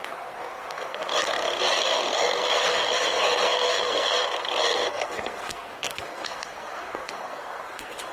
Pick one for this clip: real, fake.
fake